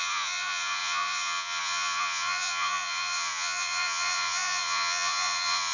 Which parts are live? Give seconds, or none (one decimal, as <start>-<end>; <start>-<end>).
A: none